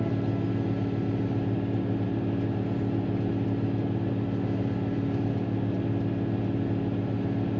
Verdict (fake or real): real